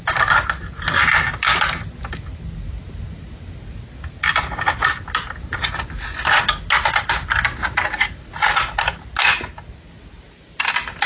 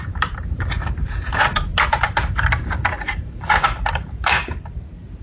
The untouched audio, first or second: first